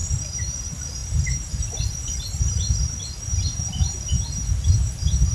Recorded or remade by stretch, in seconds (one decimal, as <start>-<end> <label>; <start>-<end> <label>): 0.0-5.3 remade